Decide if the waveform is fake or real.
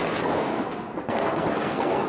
fake